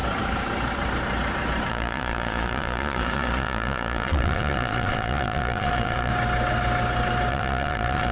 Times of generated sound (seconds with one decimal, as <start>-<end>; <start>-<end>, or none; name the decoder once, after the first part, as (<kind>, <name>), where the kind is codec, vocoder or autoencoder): 1.7-6.1 (vocoder, Vocos); 7.3-8.1